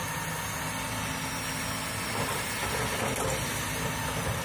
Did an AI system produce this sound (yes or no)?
no